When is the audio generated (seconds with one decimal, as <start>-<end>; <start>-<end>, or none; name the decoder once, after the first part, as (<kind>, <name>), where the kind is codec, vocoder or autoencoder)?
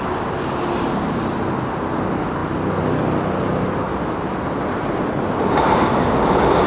none